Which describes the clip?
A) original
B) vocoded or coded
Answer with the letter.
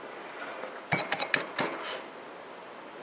A